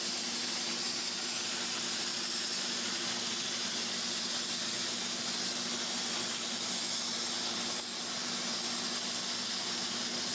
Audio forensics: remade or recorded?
recorded